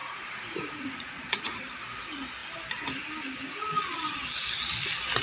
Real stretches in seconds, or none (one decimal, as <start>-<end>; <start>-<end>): 1.6-5.2